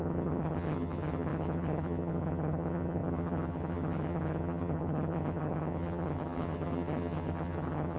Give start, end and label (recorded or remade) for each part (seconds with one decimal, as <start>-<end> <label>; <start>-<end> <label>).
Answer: 0.0-8.0 remade

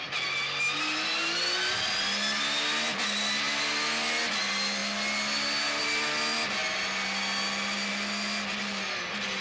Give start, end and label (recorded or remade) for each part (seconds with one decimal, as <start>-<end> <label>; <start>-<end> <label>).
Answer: 0.0-9.4 recorded

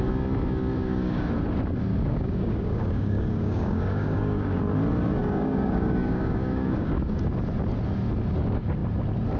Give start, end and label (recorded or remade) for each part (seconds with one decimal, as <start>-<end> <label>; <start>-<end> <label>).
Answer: 0.0-0.7 recorded; 0.7-1.3 remade; 1.3-1.9 recorded; 1.9-4.6 remade; 4.6-5.2 recorded; 5.2-7.3 remade; 7.3-9.4 recorded

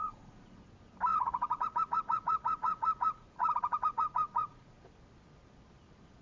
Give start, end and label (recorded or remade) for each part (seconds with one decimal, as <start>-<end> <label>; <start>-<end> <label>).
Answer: 0.0-0.6 remade; 0.6-1.1 recorded; 1.1-4.8 remade; 4.8-6.2 recorded

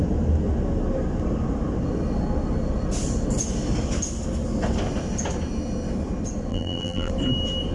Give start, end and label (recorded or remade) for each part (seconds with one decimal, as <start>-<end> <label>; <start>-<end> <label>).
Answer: 0.0-6.5 recorded; 6.5-7.1 remade; 7.1-7.7 recorded